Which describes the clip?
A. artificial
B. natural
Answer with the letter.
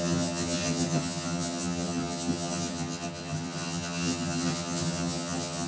A